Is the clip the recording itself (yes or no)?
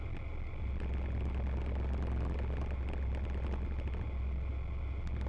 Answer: yes